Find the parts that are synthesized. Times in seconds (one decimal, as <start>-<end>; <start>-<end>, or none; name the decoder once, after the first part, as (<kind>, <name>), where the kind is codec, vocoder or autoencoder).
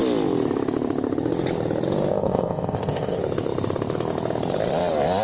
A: 2.1-3.2 (codec, ZipCodec)